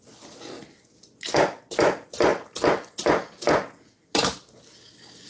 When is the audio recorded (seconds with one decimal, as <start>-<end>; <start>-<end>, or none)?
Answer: 0.0-5.3